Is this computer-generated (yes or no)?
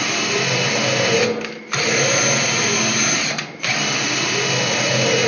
no